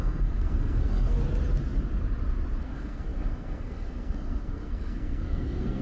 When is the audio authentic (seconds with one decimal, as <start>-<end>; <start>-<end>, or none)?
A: 1.2-2.6